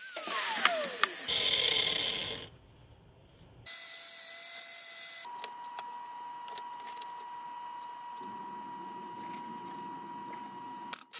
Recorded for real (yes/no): yes